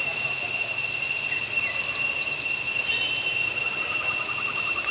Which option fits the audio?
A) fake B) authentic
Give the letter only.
B